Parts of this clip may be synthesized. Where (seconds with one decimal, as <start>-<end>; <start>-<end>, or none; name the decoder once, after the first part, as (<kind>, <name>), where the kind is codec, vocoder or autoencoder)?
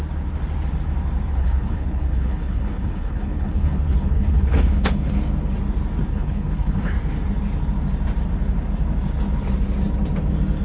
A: 1.3-5.1 (codec, HILCodec); 6.1-6.9